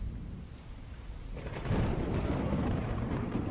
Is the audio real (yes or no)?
no